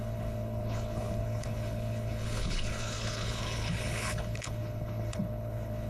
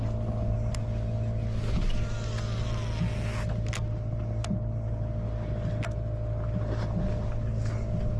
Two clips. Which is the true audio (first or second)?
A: second